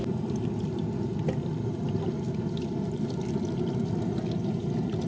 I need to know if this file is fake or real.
real